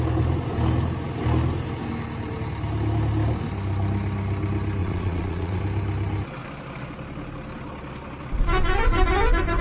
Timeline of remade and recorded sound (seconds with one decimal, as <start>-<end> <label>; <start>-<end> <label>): 0.0-4.8 recorded; 4.8-5.6 remade; 5.6-9.6 recorded